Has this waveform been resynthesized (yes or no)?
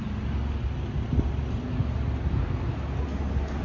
no